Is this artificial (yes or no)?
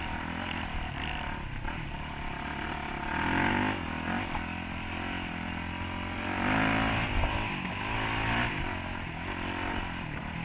no